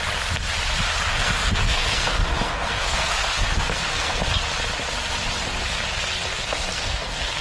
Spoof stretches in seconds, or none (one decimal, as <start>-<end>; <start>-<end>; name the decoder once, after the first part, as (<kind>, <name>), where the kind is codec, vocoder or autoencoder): 1.1-4.2 (codec, SNAC); 6.3-7.4